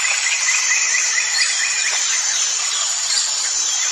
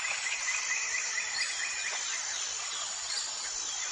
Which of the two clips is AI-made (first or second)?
first